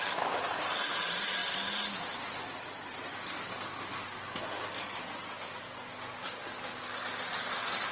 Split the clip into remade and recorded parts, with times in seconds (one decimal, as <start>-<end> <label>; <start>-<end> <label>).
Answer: 0.0-7.9 recorded